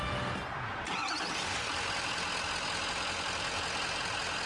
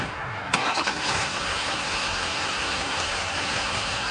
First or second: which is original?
first